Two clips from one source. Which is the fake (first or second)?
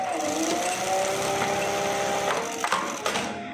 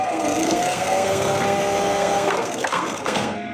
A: second